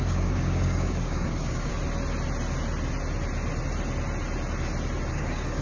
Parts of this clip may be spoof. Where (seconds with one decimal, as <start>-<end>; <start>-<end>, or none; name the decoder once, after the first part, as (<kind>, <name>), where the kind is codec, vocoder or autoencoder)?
0.0-1.7 (codec, DAC); 5.1-5.6